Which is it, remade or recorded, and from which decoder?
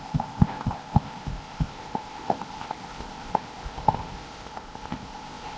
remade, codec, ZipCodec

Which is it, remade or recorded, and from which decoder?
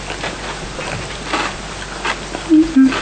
recorded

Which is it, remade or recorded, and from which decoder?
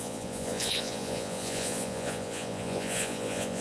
remade, vocoder, Vocos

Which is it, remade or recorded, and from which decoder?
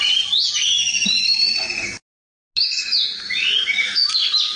recorded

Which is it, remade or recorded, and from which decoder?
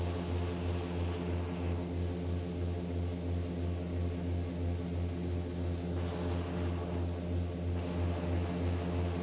recorded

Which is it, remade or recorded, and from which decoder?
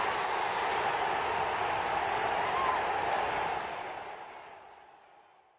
recorded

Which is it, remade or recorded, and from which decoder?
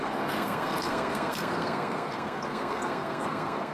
remade, codec, SNAC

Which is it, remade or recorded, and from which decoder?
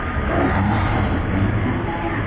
remade, vocoder, BigVGAN v2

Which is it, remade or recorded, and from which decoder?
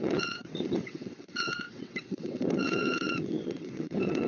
remade, vocoder, WaveNeXt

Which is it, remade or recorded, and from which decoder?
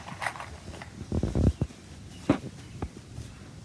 recorded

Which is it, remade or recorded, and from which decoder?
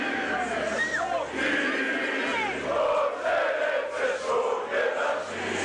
recorded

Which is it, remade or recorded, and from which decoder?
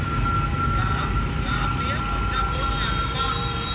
recorded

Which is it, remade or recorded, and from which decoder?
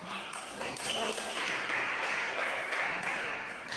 remade, codec, SNAC